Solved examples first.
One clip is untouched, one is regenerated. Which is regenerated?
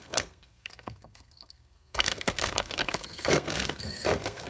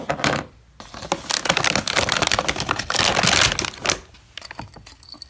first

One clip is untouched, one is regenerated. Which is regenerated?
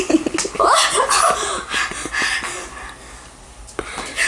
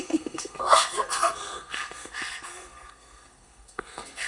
second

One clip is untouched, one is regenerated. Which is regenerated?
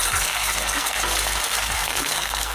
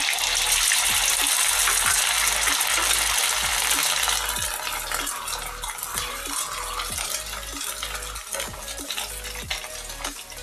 first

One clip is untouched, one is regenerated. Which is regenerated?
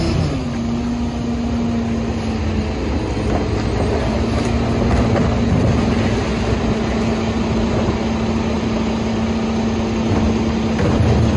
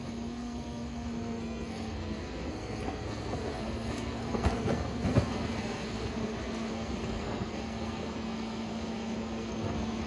second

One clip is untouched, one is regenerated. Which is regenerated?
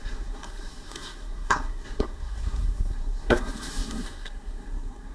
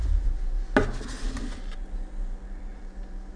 first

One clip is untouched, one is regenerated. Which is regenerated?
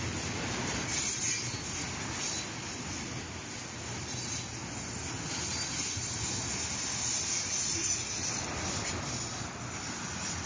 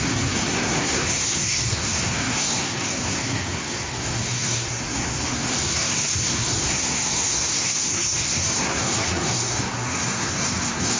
second